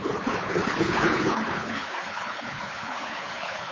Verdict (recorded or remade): remade